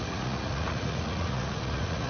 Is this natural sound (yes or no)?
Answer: no